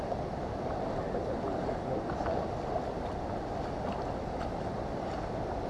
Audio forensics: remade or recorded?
recorded